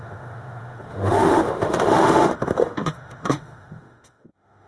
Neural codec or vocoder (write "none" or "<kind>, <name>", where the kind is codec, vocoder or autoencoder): autoencoder, DAC-VAE